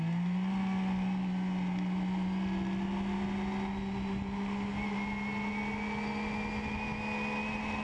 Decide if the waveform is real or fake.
real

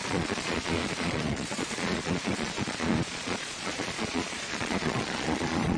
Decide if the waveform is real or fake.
fake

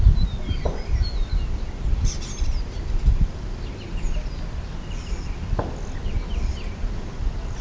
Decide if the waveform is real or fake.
real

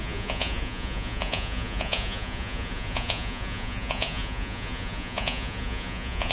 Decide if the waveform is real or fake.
fake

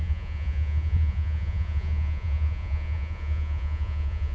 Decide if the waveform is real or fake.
fake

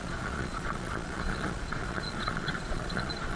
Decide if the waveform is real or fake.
fake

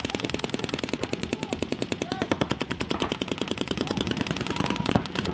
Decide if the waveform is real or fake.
fake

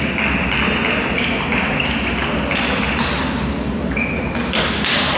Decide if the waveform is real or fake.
real